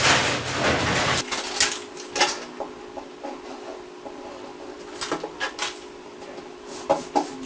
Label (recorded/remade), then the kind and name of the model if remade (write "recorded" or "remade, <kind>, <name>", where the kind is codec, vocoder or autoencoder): recorded